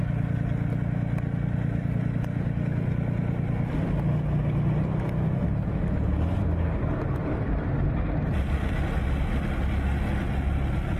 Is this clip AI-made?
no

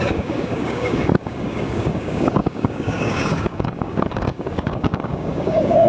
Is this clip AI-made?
yes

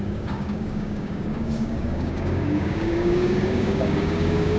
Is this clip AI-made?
yes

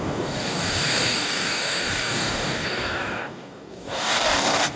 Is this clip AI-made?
yes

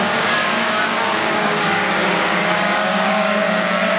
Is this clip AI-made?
yes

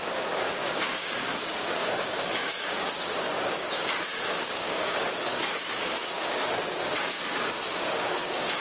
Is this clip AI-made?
yes